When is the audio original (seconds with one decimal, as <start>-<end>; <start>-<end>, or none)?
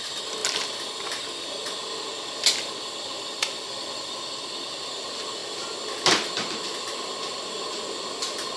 0.0-8.6